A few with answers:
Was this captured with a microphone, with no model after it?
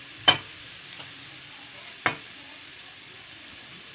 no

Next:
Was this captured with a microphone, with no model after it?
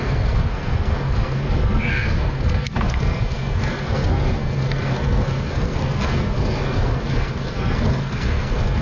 no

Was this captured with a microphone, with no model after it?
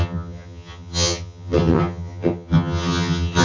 no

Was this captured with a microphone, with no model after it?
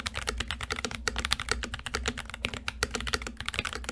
yes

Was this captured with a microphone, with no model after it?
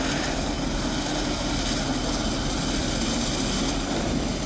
yes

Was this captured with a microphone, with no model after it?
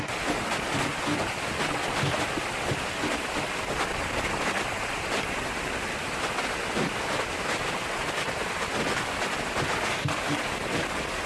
yes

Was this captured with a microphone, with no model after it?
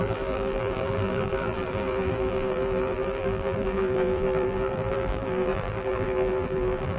no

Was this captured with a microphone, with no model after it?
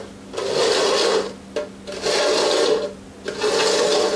yes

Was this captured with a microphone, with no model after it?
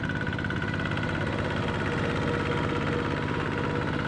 yes